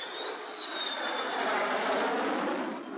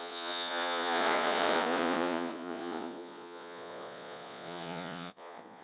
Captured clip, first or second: first